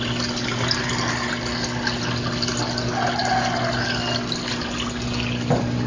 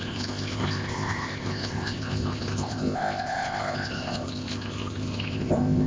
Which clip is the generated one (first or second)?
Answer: second